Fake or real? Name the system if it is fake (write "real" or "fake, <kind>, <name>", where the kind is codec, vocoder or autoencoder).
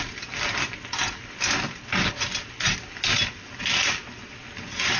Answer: real